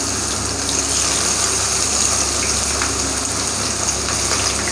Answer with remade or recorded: recorded